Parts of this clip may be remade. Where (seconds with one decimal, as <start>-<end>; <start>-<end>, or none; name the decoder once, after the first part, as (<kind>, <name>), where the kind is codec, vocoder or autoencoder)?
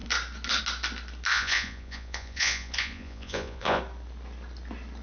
1.3-3.8 (vocoder, Vocos)